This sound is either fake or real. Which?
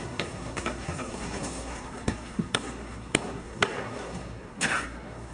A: fake